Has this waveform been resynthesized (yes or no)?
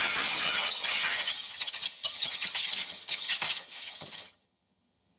yes